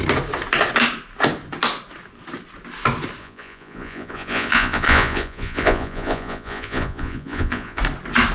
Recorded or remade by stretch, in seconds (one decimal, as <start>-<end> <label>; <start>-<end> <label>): 0.0-3.2 recorded; 3.2-7.8 remade; 7.8-8.3 recorded